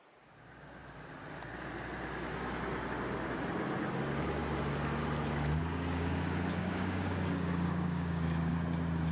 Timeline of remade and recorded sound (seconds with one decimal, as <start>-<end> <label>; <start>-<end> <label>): 0.0-5.6 recorded; 5.6-8.5 remade; 8.5-9.1 recorded